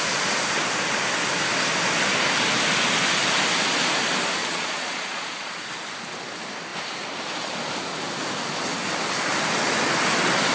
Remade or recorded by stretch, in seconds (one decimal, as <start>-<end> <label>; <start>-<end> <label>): 0.0-4.4 recorded; 4.4-5.5 remade; 5.5-10.5 recorded